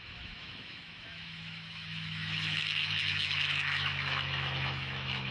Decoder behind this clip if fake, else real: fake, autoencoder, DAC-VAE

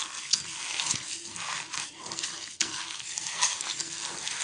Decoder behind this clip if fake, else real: fake, codec, SNAC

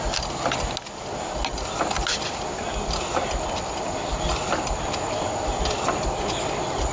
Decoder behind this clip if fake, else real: real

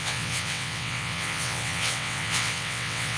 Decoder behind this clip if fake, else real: fake, vocoder, WaveNeXt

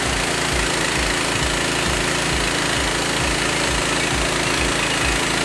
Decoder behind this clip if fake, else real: real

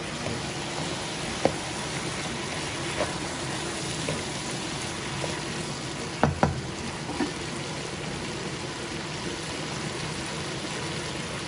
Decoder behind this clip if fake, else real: real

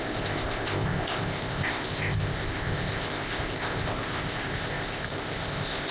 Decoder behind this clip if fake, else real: fake, codec, ZipCodec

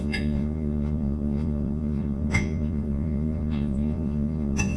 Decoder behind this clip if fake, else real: fake, vocoder, Vocos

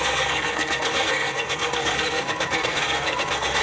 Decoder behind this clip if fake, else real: fake, codec, SNAC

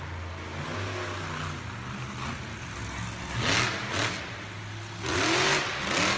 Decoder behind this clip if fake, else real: real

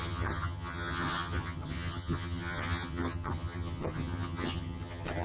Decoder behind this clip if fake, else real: fake, vocoder, HiFi-GAN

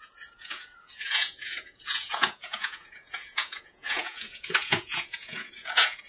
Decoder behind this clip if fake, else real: fake, vocoder, Vocos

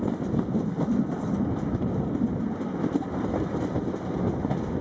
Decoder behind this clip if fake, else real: real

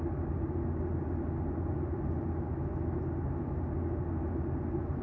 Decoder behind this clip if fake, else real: real